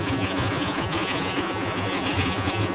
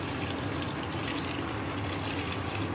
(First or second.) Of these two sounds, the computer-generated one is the first